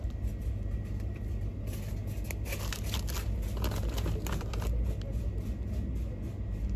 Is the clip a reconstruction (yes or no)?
no